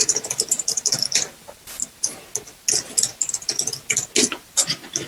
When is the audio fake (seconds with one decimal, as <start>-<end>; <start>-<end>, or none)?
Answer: 0.0-2.1